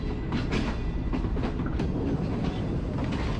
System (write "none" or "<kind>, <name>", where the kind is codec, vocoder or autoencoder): none